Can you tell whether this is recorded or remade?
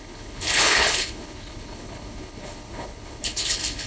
remade